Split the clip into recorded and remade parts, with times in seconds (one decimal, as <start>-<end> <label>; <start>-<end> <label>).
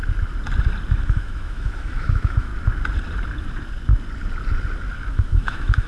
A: 0.0-1.0 recorded; 1.0-2.5 remade; 2.5-5.1 recorded; 5.1-5.9 remade